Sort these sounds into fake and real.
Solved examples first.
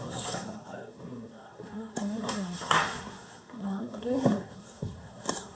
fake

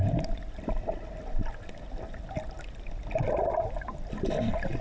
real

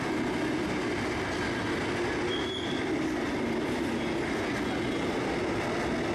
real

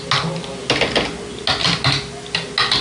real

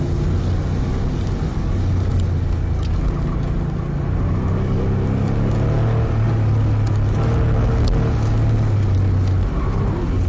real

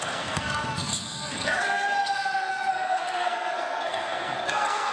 fake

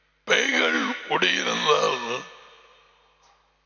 real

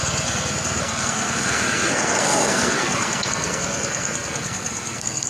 fake